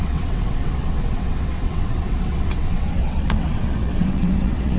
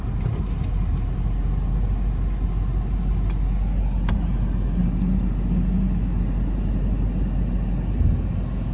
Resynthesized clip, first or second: first